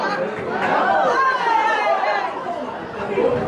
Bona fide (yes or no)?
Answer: yes